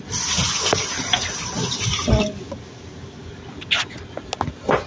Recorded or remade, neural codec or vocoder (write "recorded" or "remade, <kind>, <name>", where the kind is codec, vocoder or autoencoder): recorded